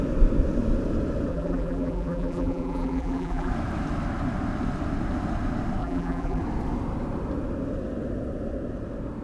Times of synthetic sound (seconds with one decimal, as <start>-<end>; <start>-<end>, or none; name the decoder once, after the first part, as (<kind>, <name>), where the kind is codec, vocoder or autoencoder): 1.3-3.5 (vocoder, BigVGAN v2); 5.8-6.4